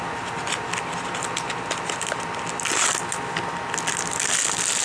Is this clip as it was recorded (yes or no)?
yes